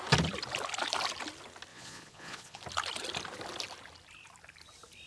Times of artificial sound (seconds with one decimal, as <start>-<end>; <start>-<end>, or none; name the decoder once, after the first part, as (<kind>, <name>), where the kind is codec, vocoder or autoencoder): 1.7-2.6 (vocoder, Vocos)